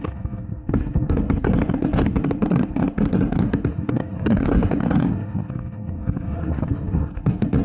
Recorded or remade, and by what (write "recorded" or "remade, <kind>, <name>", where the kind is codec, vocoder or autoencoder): remade, codec, SNAC